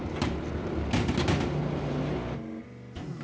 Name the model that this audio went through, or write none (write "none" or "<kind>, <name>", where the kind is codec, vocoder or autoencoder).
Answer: none